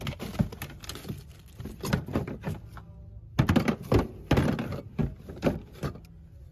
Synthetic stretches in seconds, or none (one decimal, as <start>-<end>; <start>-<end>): none